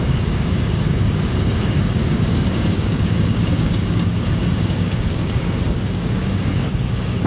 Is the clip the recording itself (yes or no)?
no